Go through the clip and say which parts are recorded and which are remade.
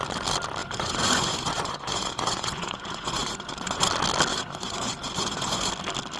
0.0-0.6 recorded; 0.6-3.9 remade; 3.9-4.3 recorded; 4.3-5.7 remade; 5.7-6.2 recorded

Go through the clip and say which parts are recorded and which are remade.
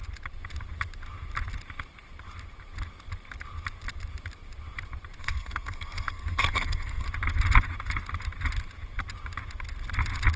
0.0-5.2 recorded; 5.2-7.1 remade; 7.1-10.4 recorded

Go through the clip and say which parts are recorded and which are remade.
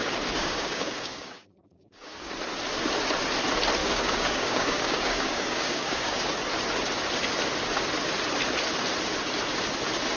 0.0-2.3 remade; 2.3-3.8 recorded; 3.8-6.3 remade; 6.3-10.2 recorded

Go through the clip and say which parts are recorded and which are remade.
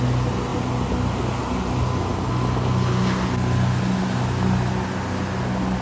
0.0-5.8 recorded